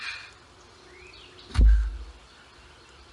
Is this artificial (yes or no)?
no